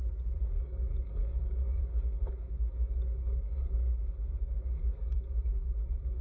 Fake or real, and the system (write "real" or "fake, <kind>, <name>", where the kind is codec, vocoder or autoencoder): fake, codec, DAC